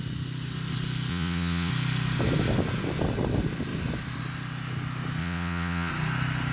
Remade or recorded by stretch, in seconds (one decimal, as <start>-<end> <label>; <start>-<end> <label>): 0.0-1.1 recorded; 1.1-1.7 remade; 1.7-5.2 recorded; 5.2-5.9 remade; 5.9-6.5 recorded